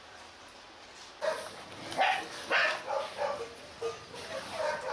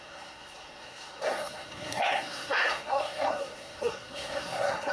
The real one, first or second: first